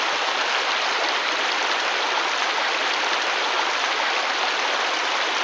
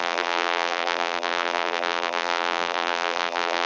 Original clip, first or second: first